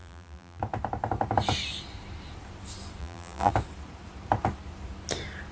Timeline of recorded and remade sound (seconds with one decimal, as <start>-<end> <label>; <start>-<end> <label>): 0.0-0.6 remade; 0.6-3.0 recorded; 3.0-3.5 remade; 3.5-5.5 recorded